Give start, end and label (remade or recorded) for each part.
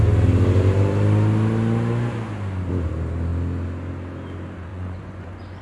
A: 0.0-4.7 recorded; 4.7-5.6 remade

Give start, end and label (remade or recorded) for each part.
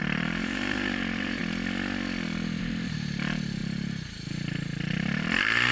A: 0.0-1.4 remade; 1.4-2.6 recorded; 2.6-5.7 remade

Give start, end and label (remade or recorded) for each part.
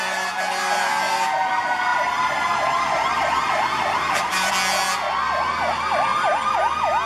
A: 0.0-1.9 recorded; 1.9-4.5 remade; 4.5-6.1 recorded; 6.1-6.6 remade; 6.6-7.1 recorded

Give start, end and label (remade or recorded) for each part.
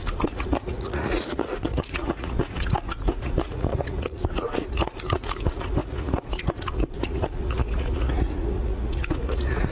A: 0.0-9.7 remade